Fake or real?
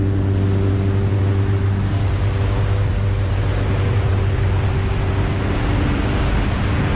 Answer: real